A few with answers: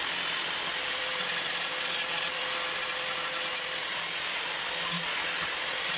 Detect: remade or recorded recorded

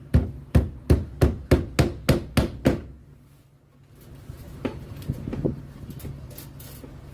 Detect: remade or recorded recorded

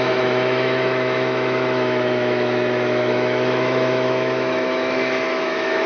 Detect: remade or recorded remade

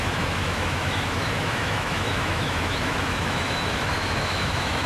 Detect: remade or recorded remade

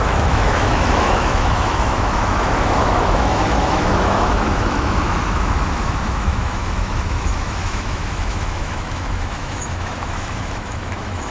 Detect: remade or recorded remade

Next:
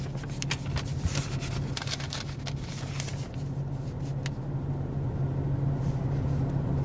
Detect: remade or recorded recorded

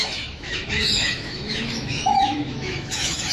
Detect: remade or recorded remade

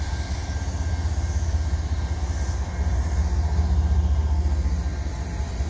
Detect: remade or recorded recorded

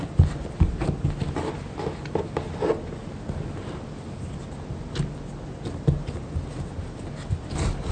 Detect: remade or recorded recorded